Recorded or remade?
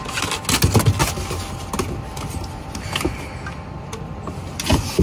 recorded